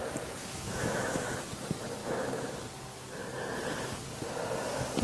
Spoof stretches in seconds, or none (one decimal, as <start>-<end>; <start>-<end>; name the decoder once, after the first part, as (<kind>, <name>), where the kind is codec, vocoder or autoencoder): 0.4-1.3 (autoencoder, DAC-VAE); 2.0-2.5